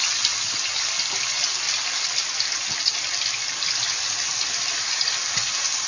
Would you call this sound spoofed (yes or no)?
no